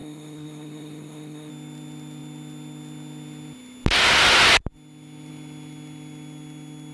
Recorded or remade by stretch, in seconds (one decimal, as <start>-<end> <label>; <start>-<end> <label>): 0.0-1.5 remade; 1.5-6.9 recorded